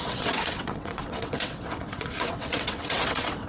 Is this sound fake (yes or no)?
yes